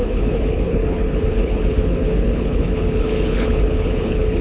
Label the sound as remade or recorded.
remade